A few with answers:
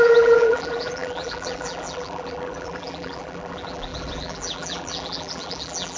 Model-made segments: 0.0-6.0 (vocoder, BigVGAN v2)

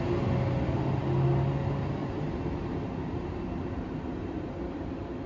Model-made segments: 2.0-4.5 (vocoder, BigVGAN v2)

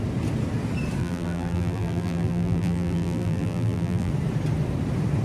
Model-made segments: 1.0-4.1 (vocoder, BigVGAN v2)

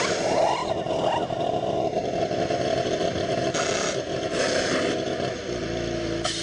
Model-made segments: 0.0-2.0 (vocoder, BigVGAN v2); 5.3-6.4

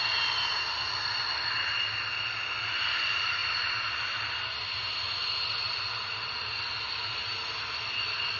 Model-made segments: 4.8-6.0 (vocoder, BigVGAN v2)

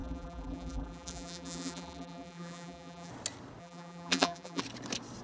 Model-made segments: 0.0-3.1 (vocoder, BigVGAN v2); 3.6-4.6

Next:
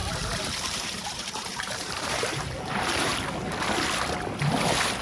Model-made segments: 0.0-3.1 (vocoder, BigVGAN v2)

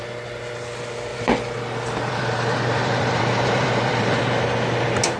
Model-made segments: 1.1-4.2 (vocoder, BigVGAN v2)